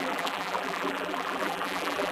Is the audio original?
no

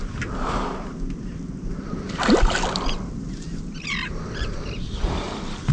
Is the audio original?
yes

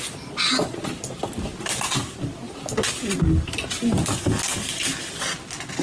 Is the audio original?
yes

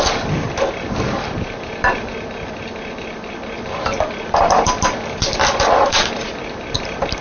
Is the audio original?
no